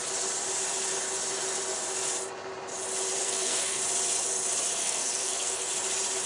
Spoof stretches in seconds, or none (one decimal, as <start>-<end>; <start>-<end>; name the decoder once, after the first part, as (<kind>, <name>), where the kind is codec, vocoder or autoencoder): 3.2-3.8 (codec, SNAC); 4.8-5.7